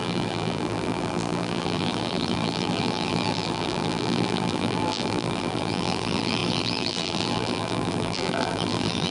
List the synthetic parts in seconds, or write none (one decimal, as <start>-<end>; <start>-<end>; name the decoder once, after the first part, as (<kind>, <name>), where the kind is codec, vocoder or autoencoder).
0.0-9.1 (vocoder, BigVGAN v2)